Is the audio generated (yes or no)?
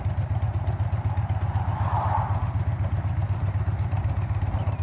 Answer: no